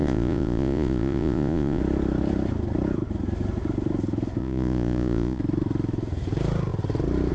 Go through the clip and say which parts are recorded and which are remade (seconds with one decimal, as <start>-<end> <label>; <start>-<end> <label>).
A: 0.0-1.8 remade; 1.8-4.4 recorded; 4.4-5.4 remade; 5.4-7.3 recorded

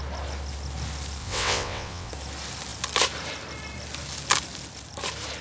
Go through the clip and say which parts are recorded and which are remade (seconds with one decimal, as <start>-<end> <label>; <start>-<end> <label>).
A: 0.0-1.2 recorded; 1.2-2.1 remade; 2.1-5.4 recorded

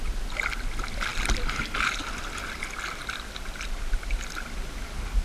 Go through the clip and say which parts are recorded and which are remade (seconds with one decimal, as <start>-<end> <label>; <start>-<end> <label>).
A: 0.0-5.2 recorded

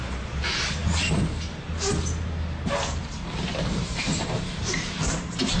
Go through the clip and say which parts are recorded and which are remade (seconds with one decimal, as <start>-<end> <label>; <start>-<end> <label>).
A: 0.0-3.0 recorded; 3.0-5.6 remade

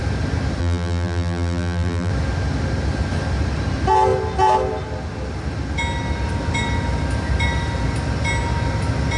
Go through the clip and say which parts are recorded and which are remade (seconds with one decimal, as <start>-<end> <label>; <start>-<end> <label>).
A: 0.0-0.6 recorded; 0.6-2.1 remade; 2.1-9.2 recorded

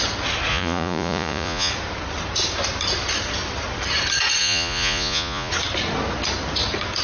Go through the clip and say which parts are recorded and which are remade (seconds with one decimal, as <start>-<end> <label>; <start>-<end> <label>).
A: 0.0-0.5 recorded; 0.5-1.7 remade; 1.7-4.4 recorded; 4.4-5.5 remade; 5.5-7.0 recorded

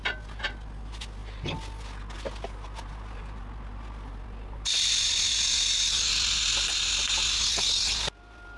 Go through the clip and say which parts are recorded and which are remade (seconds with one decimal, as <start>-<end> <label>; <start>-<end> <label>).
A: 0.0-8.6 recorded